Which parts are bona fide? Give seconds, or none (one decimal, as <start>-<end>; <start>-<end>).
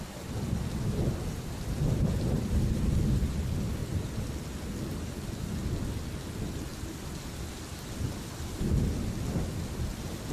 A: 3.8-6.2; 6.7-7.9